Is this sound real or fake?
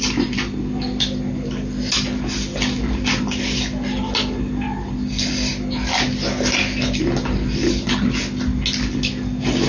real